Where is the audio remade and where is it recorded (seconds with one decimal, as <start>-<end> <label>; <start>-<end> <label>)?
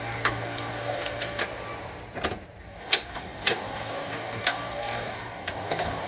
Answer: 0.0-1.4 remade; 1.4-2.6 recorded; 2.6-6.1 remade